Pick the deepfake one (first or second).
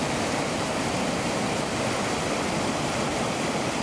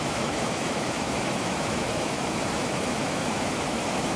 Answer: second